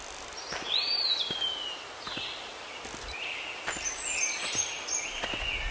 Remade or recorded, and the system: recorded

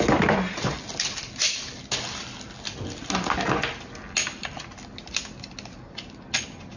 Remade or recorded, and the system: recorded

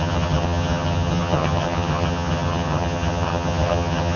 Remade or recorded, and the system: remade, vocoder, HiFi-GAN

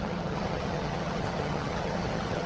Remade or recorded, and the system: remade, vocoder, HiFi-GAN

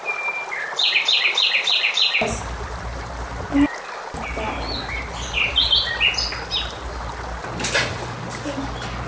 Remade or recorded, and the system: recorded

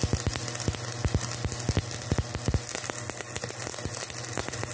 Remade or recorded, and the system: recorded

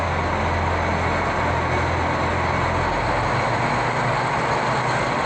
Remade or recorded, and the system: recorded